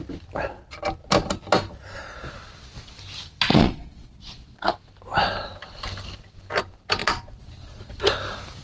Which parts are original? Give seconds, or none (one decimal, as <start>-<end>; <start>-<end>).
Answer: 0.0-3.5; 4.6-7.0; 8.0-8.6